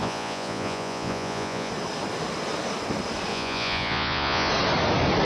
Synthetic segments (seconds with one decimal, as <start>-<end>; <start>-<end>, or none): 0.0-1.7; 3.3-4.5